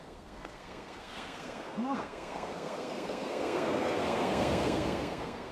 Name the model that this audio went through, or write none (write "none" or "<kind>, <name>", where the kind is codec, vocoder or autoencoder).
codec, SNAC